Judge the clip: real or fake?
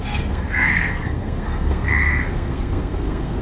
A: fake